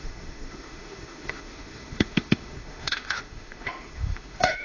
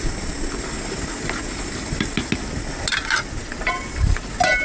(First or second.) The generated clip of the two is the first